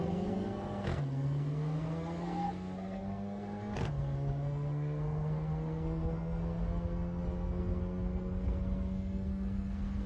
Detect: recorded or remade remade